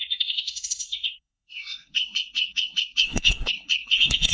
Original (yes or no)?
no